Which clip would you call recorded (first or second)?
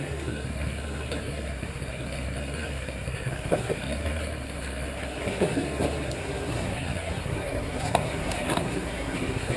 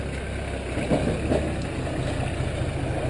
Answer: second